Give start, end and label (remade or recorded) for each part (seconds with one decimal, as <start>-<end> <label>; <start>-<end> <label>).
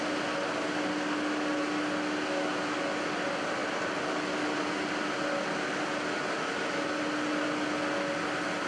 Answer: 0.0-8.7 recorded